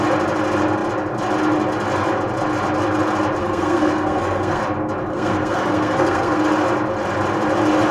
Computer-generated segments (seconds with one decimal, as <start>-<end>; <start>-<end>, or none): 3.4-4.6; 5.1-6.4